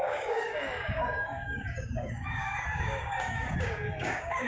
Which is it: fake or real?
fake